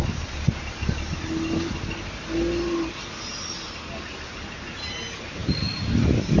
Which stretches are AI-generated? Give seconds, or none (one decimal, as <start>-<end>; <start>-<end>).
none